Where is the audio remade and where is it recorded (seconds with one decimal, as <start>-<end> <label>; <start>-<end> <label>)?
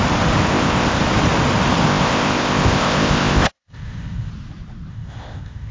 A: 0.0-0.5 recorded; 0.5-1.0 remade; 1.0-1.9 recorded; 1.9-4.3 remade; 4.3-4.9 recorded; 4.9-5.7 remade